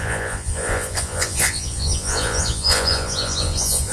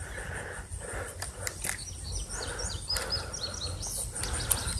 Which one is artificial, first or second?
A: first